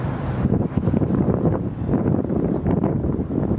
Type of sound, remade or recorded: remade